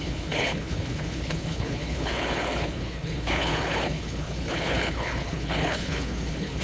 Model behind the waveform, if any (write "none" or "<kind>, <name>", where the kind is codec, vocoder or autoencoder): codec, HILCodec